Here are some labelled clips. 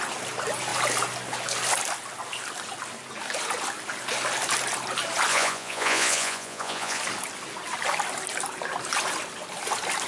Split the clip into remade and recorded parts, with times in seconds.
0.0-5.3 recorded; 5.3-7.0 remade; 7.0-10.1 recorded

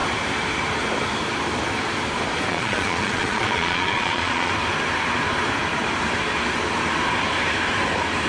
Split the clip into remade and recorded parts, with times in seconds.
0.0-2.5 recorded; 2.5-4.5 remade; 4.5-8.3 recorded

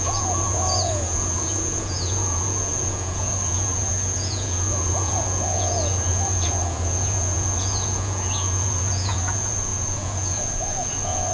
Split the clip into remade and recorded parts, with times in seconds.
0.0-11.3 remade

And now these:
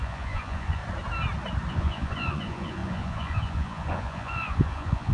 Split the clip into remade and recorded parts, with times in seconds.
0.0-0.8 remade; 0.8-1.7 recorded; 1.7-5.1 remade

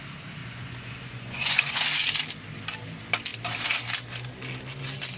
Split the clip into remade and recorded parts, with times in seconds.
0.0-0.4 recorded; 0.4-1.8 remade; 1.8-5.2 recorded

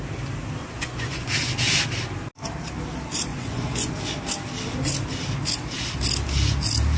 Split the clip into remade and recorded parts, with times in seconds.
0.0-0.6 recorded; 0.6-1.3 remade; 1.3-3.3 recorded; 3.3-3.9 remade; 3.9-7.0 recorded

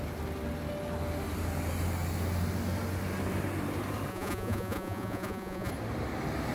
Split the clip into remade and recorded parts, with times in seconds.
0.0-4.1 recorded; 4.1-5.7 remade; 5.7-6.5 recorded